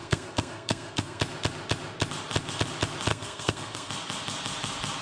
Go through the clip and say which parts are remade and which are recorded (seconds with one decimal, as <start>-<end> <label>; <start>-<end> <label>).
0.0-1.2 remade; 1.2-3.1 recorded; 3.1-3.9 remade; 3.9-5.0 recorded